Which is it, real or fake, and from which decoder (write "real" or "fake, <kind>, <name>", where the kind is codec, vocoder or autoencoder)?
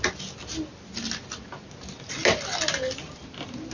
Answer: real